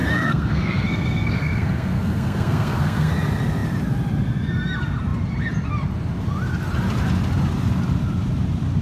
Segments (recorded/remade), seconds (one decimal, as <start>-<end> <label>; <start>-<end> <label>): 0.0-3.1 remade; 3.1-8.8 recorded